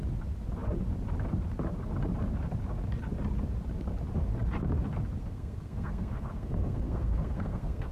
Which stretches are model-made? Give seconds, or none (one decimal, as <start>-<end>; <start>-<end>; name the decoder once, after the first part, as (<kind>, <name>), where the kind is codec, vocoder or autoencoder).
5.2-7.9 (codec, SNAC)